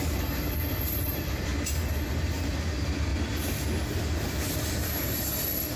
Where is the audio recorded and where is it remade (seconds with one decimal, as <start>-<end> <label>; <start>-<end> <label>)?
0.0-5.8 recorded